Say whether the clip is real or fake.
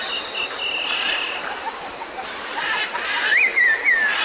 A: real